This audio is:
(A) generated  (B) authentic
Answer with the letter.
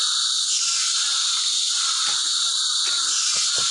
B